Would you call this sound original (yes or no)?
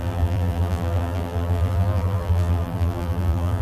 no